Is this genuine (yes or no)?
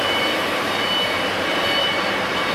no